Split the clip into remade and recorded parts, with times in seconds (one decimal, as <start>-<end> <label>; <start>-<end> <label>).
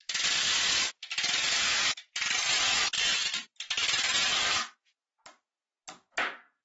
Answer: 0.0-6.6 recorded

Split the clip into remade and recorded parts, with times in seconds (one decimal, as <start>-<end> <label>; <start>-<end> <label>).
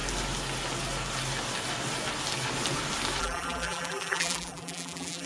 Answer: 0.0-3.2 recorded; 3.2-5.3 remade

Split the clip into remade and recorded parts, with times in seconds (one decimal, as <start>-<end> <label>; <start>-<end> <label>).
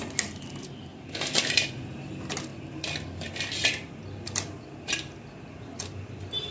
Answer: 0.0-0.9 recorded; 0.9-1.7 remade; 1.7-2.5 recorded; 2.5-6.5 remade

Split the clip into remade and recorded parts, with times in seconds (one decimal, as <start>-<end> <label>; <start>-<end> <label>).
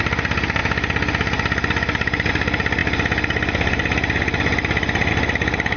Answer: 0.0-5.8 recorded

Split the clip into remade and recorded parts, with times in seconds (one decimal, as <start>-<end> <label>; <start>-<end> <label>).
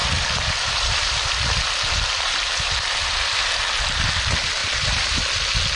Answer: 0.0-3.5 remade; 3.5-4.6 recorded; 4.6-5.2 remade; 5.2-5.8 recorded